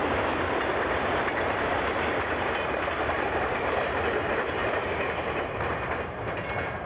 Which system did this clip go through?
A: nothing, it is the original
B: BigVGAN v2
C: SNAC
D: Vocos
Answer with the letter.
B